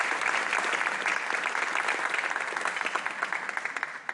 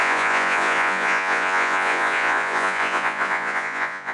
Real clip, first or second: first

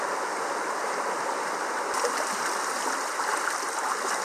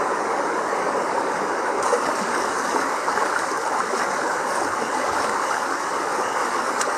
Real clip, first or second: first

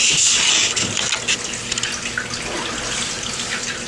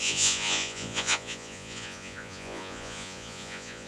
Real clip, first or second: first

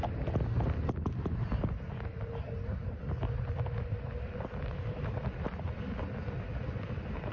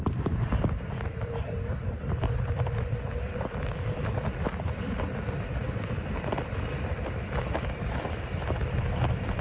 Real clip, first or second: first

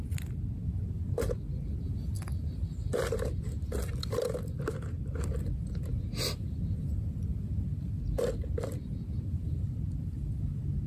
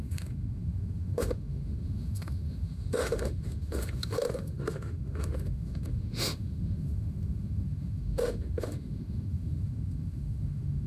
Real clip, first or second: first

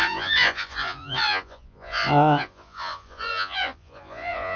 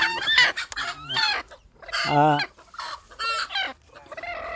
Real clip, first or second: second